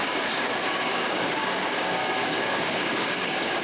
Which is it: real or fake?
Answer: fake